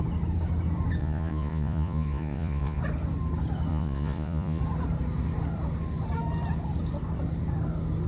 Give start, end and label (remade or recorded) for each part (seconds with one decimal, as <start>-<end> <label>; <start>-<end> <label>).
0.0-1.0 recorded; 1.0-2.8 remade; 2.8-3.7 recorded; 3.7-4.6 remade; 4.6-8.1 recorded